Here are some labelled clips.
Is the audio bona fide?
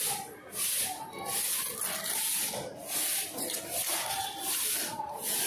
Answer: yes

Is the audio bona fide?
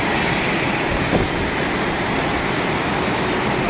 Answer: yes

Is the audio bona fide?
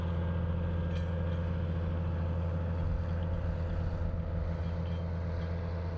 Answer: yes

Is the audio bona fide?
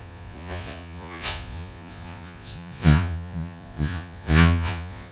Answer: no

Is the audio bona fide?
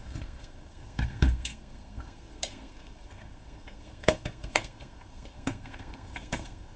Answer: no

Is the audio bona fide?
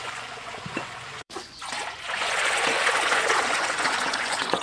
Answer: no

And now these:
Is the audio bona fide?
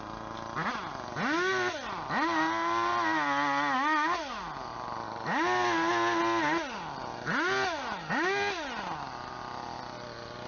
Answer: yes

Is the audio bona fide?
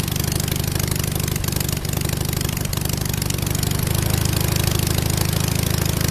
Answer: yes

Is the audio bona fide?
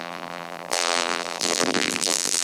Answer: no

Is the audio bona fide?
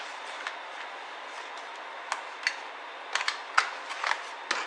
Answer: yes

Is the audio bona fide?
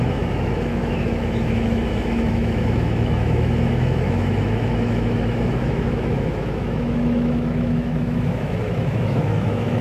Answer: no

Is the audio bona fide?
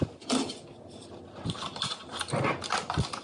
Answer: yes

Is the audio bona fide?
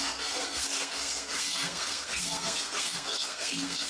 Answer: no